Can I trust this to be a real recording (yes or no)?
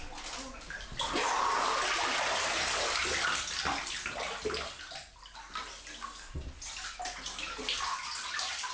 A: yes